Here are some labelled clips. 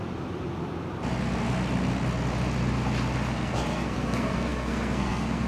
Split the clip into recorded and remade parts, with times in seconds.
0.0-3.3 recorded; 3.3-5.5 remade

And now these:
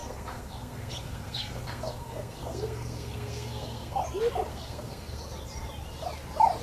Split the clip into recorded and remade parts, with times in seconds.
0.0-4.0 remade; 4.0-4.5 recorded; 4.5-5.2 remade; 5.2-6.6 recorded

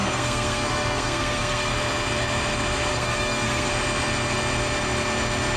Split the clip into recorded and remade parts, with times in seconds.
0.0-1.7 remade; 1.7-2.9 recorded; 2.9-3.7 remade; 3.7-5.6 recorded